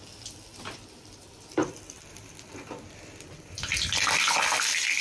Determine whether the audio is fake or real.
fake